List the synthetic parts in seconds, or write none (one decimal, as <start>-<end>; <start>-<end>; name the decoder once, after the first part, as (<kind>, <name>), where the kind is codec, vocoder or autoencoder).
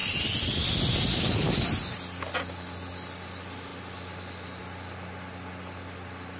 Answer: 0.0-0.7 (vocoder, BigVGAN v2); 3.7-4.6